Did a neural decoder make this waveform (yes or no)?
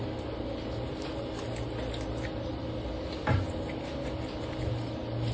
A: no